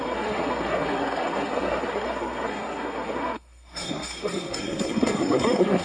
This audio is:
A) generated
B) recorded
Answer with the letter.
A